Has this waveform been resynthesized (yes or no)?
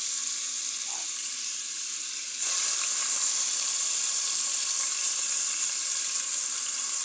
yes